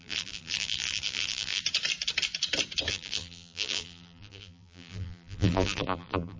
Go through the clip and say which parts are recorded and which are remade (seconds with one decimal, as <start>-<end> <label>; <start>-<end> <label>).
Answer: 0.0-1.6 remade; 1.6-2.9 recorded; 2.9-6.4 remade